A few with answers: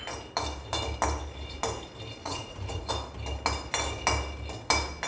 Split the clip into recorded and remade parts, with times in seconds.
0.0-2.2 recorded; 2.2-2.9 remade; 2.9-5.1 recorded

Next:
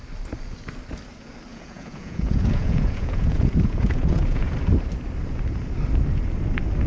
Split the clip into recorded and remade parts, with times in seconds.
0.0-1.5 recorded; 1.5-4.5 remade; 4.5-6.9 recorded

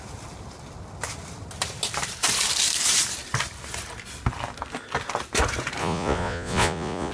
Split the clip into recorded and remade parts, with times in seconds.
0.0-5.8 recorded; 5.8-7.1 remade